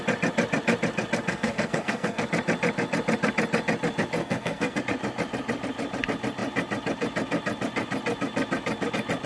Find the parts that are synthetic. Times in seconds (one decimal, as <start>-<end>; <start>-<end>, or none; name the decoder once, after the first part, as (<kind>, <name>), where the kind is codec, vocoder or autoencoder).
1.3-2.2 (codec, SNAC); 4.2-4.8